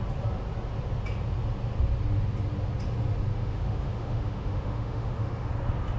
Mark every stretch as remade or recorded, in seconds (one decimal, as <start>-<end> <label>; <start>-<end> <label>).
0.0-3.3 recorded; 3.3-5.5 remade; 5.5-6.0 recorded